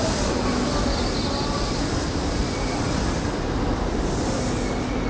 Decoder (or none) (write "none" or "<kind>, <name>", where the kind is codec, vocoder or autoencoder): none